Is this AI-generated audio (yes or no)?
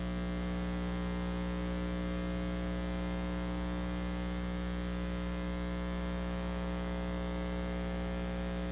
no